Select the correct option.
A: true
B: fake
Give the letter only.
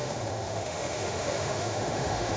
B